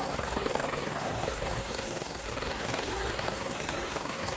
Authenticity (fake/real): fake